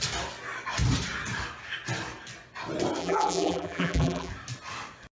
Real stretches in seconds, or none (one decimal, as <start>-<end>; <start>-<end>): 0.0-3.0; 4.3-5.2